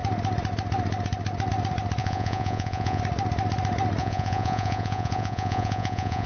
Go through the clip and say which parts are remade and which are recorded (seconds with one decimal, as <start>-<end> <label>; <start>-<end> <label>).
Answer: 0.0-2.0 recorded; 2.0-3.0 remade; 3.0-4.0 recorded; 4.0-6.3 remade